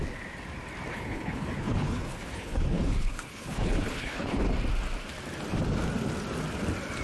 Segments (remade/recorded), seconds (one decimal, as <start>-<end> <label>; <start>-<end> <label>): 0.0-0.9 recorded; 0.9-4.5 remade; 4.5-7.0 recorded